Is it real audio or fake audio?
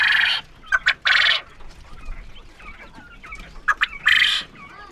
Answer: real